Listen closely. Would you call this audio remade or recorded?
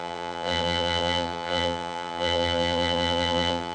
remade